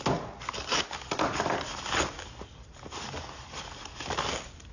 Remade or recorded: recorded